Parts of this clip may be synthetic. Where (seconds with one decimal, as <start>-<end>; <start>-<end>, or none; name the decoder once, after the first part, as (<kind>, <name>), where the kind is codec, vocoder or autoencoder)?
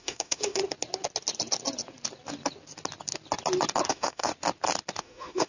0.0-0.6 (autoencoder, DAC-VAE); 3.9-4.3; 5.0-5.5